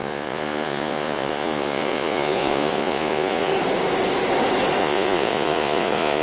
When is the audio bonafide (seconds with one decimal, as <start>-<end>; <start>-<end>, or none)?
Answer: 3.5-4.8